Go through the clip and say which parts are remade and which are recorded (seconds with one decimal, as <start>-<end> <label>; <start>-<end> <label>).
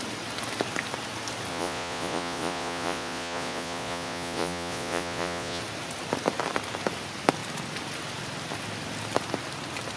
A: 0.0-1.5 recorded; 1.5-5.6 remade; 5.6-10.0 recorded